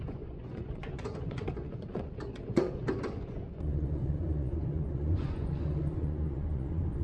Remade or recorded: remade